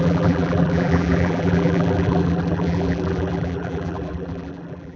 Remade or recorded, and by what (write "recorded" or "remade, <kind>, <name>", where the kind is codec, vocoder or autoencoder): remade, vocoder, BigVGAN v2